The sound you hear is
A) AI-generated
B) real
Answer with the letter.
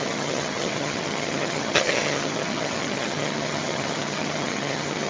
A